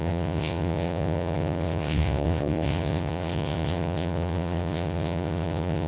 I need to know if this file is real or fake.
fake